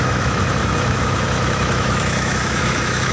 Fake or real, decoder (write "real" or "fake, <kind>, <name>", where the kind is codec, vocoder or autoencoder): fake, autoencoder, DAC-VAE